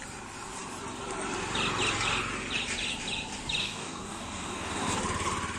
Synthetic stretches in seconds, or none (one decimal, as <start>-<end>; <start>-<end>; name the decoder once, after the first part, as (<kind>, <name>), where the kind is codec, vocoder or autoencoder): 3.6-5.0 (codec, DAC)